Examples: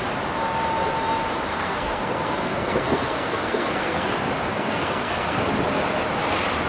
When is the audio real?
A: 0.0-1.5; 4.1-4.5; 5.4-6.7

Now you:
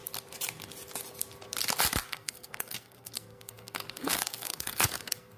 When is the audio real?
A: 0.0-2.0

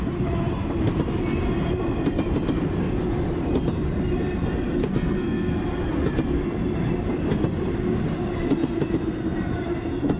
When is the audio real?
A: 0.0-4.8; 5.6-10.2

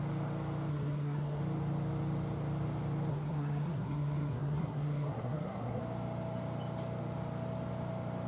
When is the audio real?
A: 0.0-0.7; 1.4-3.1; 5.8-8.3